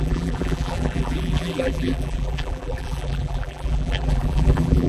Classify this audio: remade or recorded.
remade